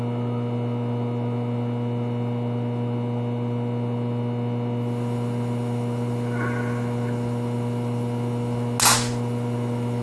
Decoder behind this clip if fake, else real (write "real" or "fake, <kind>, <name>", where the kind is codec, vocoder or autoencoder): real